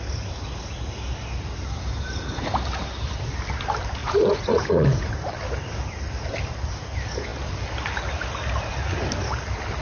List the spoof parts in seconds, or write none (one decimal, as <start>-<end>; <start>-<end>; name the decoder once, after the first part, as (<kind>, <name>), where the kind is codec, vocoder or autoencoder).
4.0-5.1 (vocoder, Vocos)